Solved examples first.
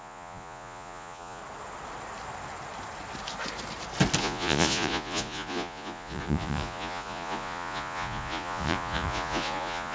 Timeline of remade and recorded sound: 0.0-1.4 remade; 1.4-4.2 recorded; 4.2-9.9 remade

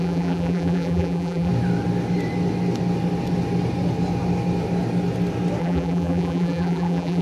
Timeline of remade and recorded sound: 0.0-1.5 remade; 1.5-5.6 recorded; 5.6-7.2 remade

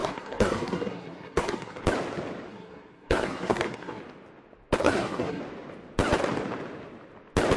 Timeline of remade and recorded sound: 0.0-1.8 remade; 1.8-2.5 recorded; 2.5-4.0 remade; 4.0-4.8 recorded; 4.8-5.4 remade; 5.4-7.6 recorded

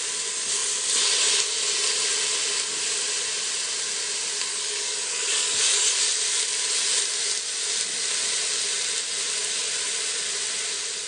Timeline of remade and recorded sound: 0.0-4.5 recorded; 4.5-6.0 remade; 6.0-11.1 recorded

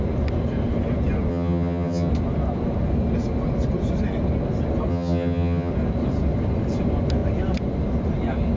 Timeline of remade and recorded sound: 0.0-1.3 recorded; 1.3-2.1 remade; 2.1-4.9 recorded; 4.9-5.7 remade; 5.7-8.6 recorded

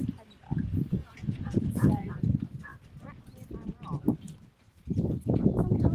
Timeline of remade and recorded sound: 0.0-1.0 recorded; 1.0-2.1 remade; 2.1-5.9 recorded

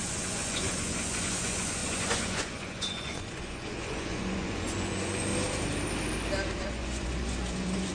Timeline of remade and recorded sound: 0.0-5.3 remade; 5.3-6.6 recorded; 6.6-7.9 remade

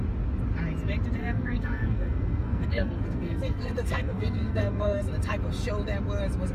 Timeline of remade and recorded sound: 0.0-1.2 recorded; 1.2-5.1 remade; 5.1-6.5 recorded